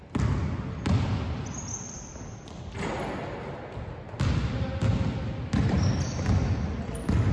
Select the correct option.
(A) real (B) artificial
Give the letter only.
A